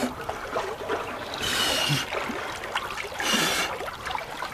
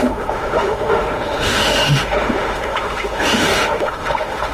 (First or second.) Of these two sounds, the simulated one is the second